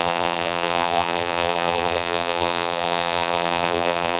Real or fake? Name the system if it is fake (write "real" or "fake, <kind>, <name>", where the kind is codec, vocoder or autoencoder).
fake, vocoder, BigVGAN v2